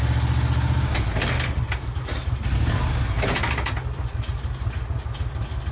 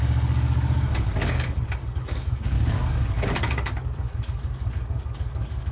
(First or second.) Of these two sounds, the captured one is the first